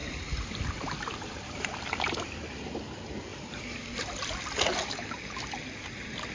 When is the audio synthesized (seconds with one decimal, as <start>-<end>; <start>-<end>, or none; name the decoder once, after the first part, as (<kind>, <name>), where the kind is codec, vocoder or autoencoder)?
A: 0.0-1.8 (vocoder, BigVGAN v2)